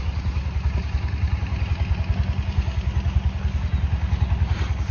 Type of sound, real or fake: real